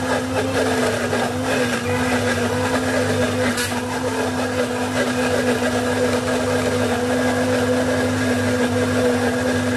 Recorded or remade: recorded